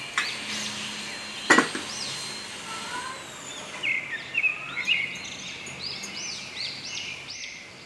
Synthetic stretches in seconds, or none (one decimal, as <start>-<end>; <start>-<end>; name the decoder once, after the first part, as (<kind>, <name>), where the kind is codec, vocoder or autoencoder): 4.5-5.2 (vocoder, BigVGAN v2)